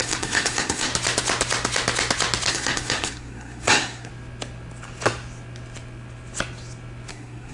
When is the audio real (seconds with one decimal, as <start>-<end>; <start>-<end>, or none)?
0.9-2.5; 4.1-7.1